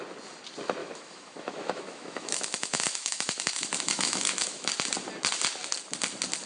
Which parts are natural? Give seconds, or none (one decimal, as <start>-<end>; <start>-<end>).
0.0-0.8; 4.7-6.5